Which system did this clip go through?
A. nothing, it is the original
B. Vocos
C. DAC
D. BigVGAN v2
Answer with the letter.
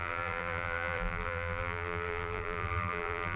D